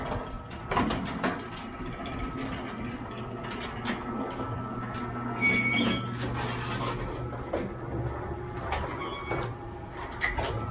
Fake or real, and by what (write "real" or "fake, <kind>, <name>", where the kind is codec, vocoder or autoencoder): real